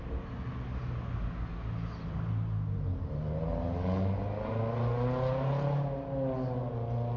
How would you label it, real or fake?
real